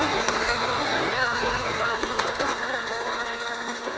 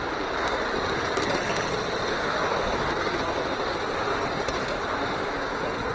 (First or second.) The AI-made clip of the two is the first